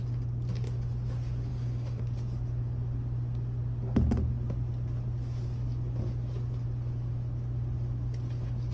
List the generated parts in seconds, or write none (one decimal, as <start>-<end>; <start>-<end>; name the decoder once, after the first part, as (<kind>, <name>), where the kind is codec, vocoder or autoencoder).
1.5-2.0 (codec, DAC)